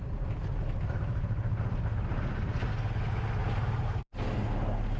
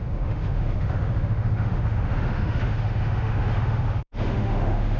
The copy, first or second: second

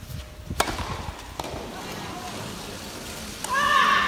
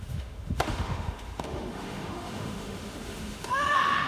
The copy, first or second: second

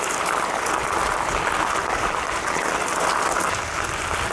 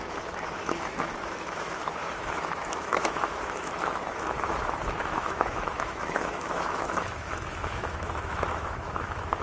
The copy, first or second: second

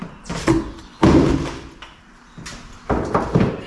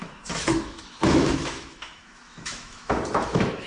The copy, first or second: second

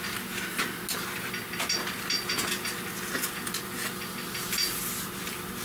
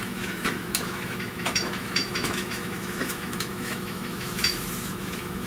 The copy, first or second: second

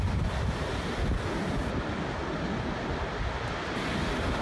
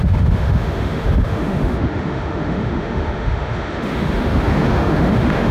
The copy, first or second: second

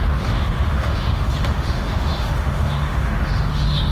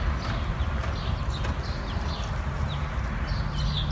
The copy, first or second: first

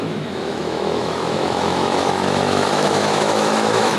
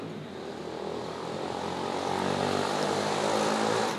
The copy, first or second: first